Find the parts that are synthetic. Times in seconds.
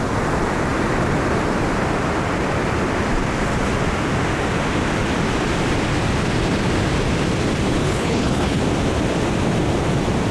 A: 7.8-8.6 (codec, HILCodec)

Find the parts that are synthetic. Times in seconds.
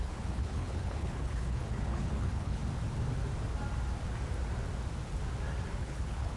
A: 0.0-2.6 (codec, HILCodec); 5.8-6.4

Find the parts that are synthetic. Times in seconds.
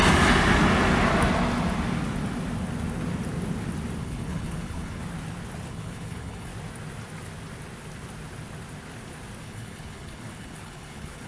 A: 4.0-5.0 (codec, HILCodec); 5.7-6.5; 9.4-11.3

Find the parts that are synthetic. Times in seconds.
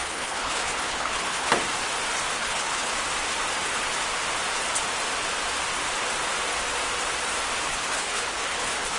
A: 0.0-1.5 (codec, HILCodec); 2.3-2.9; 7.7-9.0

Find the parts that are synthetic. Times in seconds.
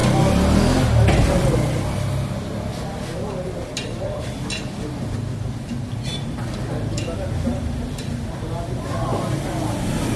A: none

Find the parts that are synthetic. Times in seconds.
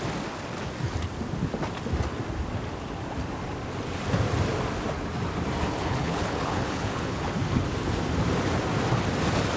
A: 5.8-7.3 (codec, HILCodec)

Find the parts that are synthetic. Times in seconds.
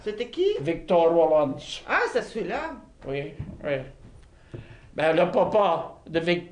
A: none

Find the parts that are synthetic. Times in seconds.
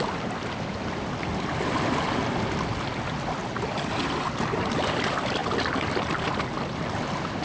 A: none